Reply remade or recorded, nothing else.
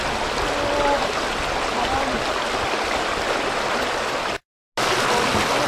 recorded